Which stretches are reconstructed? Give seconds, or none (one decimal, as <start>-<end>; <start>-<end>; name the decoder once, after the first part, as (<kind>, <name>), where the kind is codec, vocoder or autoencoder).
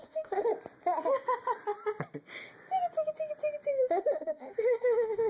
0.0-0.5 (autoencoder, DAC-VAE); 3.7-5.3